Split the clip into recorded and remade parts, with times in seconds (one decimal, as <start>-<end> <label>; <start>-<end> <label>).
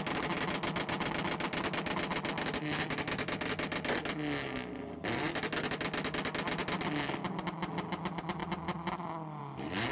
0.0-9.9 recorded